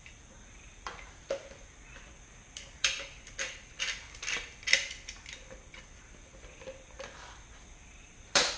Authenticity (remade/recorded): remade